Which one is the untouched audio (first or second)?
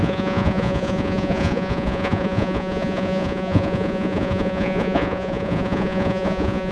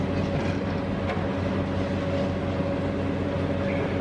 second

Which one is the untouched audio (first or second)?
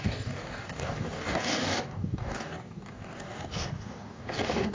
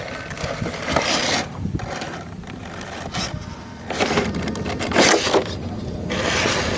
second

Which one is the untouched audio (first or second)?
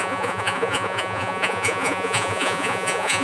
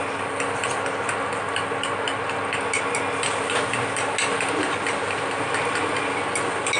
second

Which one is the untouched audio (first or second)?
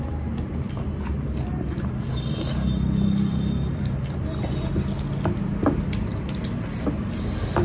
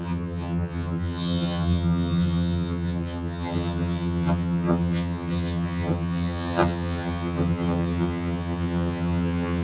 first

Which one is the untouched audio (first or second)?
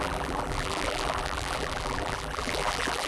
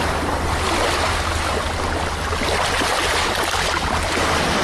second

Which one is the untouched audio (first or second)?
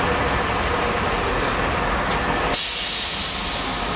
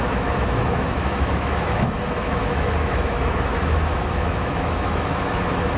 first